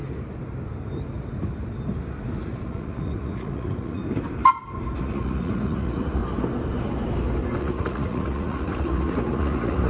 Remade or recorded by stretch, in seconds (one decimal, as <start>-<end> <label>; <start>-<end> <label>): 0.0-2.4 recorded; 2.4-4.0 remade; 4.0-5.0 recorded; 5.0-6.2 remade; 6.2-7.6 recorded; 7.6-9.9 remade